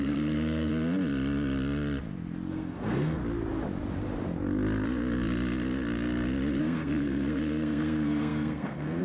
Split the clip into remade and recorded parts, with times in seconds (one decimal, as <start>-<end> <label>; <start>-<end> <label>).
0.0-0.7 remade; 0.7-2.5 recorded; 2.5-3.2 remade; 3.2-6.6 recorded; 6.6-9.0 remade

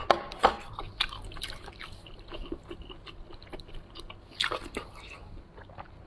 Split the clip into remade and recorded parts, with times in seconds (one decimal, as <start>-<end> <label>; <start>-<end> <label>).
0.0-6.1 recorded

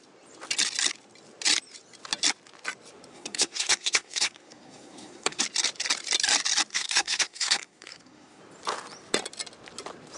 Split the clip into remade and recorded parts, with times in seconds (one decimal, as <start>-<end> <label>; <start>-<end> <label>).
0.0-3.1 recorded; 3.1-5.4 remade; 5.4-6.7 recorded; 6.7-8.4 remade; 8.4-10.2 recorded

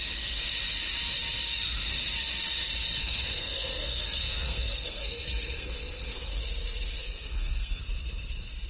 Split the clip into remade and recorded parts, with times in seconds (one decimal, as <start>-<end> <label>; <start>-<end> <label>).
0.0-3.0 recorded; 3.0-6.4 remade; 6.4-7.0 recorded; 7.0-7.8 remade; 7.8-8.7 recorded

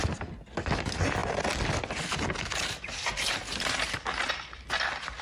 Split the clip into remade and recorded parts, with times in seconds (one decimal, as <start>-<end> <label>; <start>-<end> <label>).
0.0-5.2 recorded

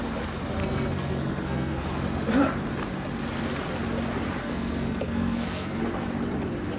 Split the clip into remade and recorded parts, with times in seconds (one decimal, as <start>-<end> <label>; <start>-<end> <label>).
0.0-0.6 recorded; 0.6-1.8 remade; 1.8-4.4 recorded; 4.4-5.8 remade; 5.8-6.8 recorded

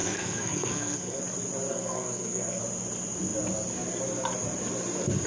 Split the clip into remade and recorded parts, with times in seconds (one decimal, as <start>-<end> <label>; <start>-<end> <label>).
0.0-1.2 remade; 1.2-1.7 recorded; 1.7-2.6 remade; 2.6-5.3 recorded